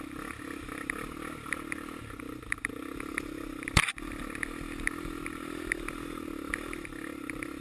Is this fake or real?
real